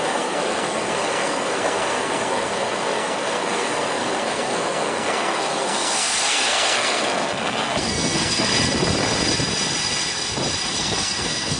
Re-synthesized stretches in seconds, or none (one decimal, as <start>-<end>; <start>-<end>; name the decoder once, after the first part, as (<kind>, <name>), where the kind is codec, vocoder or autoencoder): 0.0-8.5 (codec, SNAC); 10.8-11.6